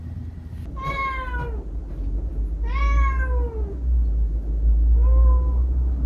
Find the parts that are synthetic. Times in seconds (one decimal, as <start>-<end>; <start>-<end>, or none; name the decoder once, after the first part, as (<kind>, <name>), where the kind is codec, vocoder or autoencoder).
none